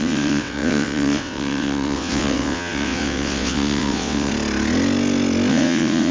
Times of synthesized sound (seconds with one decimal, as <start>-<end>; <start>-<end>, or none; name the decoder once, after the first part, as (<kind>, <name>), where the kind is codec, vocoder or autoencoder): 0.0-4.3 (vocoder, WaveNeXt); 5.5-6.1